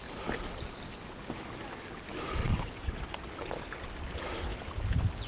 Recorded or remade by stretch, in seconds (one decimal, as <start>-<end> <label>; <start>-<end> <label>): 0.0-2.4 recorded; 2.4-3.0 remade; 3.0-5.3 recorded